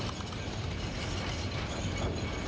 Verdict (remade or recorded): recorded